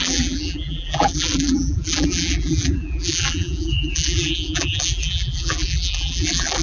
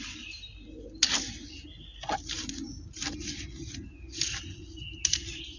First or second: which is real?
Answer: second